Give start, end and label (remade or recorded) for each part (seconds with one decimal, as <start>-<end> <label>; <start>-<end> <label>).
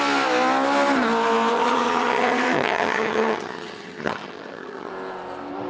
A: 0.0-1.5 recorded; 1.5-4.9 remade; 4.9-5.7 recorded